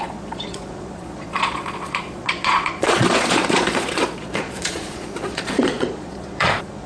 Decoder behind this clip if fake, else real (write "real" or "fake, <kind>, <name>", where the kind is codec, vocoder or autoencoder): fake, vocoder, Vocos